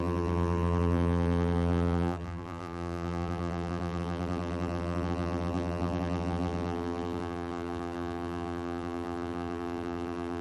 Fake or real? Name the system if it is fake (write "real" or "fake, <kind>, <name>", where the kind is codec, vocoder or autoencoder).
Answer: fake, vocoder, BigVGAN v2